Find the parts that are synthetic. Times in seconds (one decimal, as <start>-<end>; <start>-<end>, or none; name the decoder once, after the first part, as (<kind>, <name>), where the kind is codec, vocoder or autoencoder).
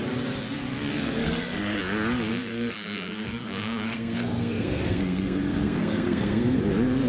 1.0-1.8 (codec, SNAC); 2.3-6.6